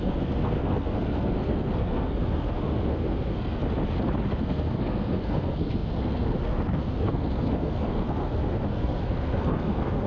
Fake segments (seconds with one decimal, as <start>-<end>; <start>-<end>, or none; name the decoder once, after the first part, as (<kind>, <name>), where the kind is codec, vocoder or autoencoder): 0.0-3.6 (codec, SNAC); 4.3-10.1